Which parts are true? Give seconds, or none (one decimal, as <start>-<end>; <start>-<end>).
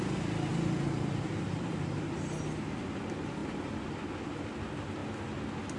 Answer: 0.0-0.5; 2.2-5.8